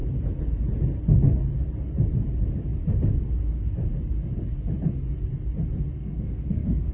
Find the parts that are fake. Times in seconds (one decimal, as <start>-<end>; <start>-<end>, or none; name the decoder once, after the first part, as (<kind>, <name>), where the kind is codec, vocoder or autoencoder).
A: 5.9-6.9 (codec, SNAC)